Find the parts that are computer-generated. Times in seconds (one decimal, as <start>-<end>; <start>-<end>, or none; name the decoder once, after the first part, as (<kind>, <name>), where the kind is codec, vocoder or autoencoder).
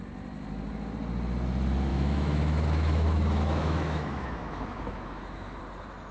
1.9-5.6 (autoencoder, DAC-VAE)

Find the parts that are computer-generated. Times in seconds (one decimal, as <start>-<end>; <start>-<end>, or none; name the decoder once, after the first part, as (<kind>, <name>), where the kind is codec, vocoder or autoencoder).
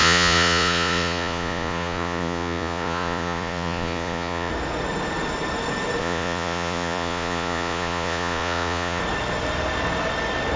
0.0-4.5 (vocoder, Vocos); 6.0-9.0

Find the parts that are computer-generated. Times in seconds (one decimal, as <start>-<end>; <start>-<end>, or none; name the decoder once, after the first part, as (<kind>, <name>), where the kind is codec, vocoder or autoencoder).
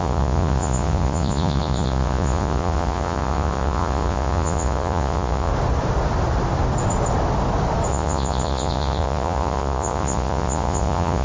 0.0-5.5 (vocoder, Vocos); 7.9-11.2